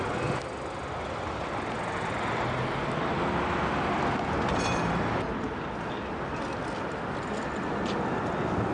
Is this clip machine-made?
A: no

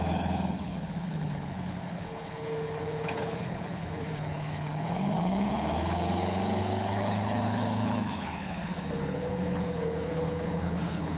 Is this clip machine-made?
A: yes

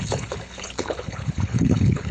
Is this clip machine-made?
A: yes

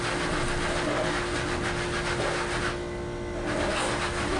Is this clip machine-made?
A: no